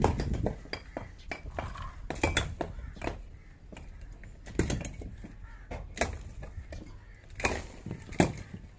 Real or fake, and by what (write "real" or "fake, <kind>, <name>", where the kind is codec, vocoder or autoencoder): real